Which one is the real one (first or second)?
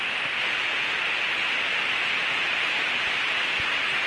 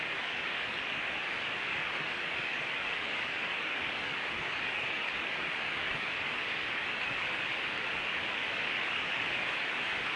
first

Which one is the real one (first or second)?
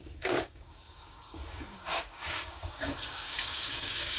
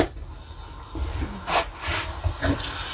second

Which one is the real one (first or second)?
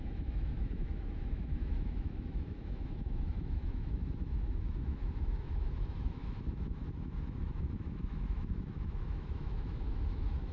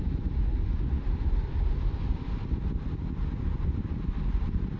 second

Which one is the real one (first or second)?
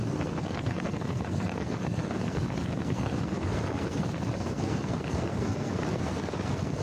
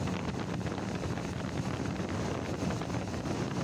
second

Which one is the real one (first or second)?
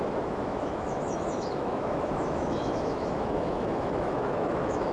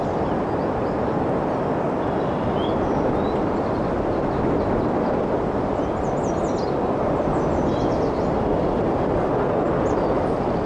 second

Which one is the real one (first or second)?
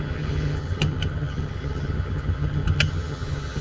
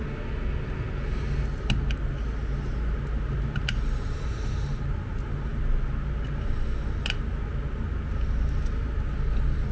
second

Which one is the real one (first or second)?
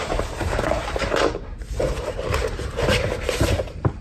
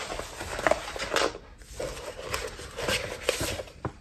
second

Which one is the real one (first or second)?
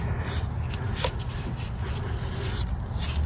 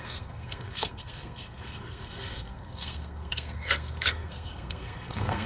first